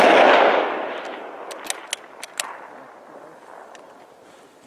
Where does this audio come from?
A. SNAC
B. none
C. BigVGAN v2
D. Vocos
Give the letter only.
B